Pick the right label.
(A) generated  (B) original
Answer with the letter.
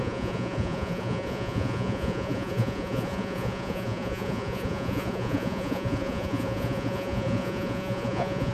A